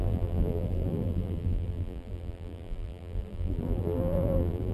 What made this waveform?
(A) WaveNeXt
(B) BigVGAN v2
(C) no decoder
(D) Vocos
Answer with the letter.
B